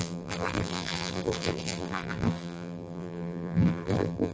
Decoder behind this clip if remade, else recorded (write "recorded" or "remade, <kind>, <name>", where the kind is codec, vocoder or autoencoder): remade, vocoder, BigVGAN v2